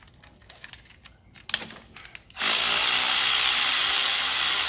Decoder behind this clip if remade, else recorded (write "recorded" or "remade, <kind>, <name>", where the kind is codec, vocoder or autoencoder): recorded